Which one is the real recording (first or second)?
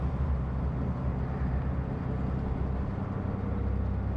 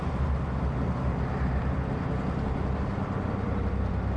first